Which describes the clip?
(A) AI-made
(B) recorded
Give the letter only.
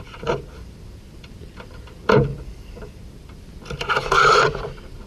A